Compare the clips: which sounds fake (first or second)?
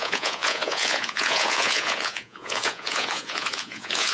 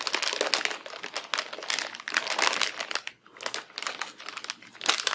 first